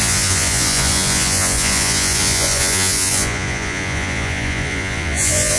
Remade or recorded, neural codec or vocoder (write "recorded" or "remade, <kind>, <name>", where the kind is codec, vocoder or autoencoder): remade, vocoder, Vocos